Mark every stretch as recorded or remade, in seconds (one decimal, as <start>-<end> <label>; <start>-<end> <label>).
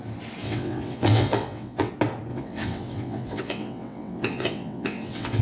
0.0-0.4 recorded; 0.4-1.9 remade; 1.9-2.3 recorded; 2.3-5.4 remade